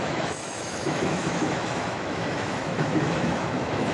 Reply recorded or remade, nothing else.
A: remade